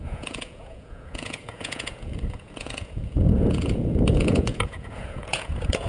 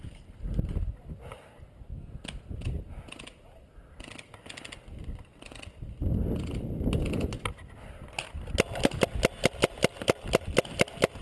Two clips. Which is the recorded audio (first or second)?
second